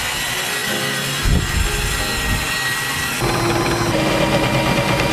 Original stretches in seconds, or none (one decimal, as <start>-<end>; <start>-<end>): 0.0-5.1